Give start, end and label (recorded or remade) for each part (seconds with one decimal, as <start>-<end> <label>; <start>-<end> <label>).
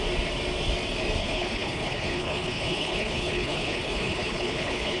0.0-1.2 recorded; 1.2-5.0 remade